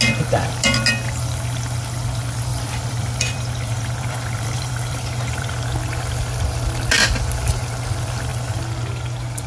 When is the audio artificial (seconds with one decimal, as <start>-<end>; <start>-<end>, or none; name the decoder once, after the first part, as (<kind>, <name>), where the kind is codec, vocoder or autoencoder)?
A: 2.5-5.5 (vocoder, BigVGAN v2)